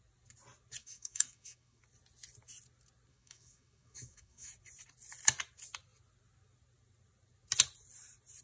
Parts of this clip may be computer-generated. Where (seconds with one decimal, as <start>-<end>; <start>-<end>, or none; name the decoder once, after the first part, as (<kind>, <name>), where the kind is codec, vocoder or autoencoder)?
0.8-1.8 (autoencoder, DAC-VAE); 3.1-4.5

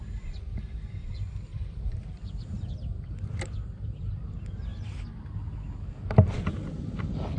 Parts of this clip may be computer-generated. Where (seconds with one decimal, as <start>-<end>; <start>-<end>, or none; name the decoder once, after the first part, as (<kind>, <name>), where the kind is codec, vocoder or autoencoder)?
1.5-4.2 (vocoder, BigVGAN v2); 6.5-7.4

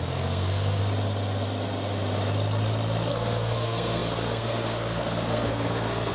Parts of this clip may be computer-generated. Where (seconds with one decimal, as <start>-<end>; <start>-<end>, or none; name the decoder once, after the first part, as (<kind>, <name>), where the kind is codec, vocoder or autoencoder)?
0.0-0.8 (codec, SNAC); 3.1-6.1

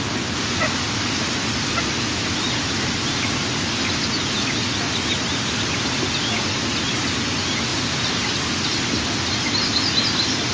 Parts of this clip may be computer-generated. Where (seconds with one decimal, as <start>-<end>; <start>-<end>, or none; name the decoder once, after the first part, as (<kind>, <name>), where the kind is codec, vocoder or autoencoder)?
2.1-3.8 (vocoder, BigVGAN v2); 7.7-8.5